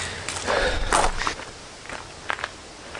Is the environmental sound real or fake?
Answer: real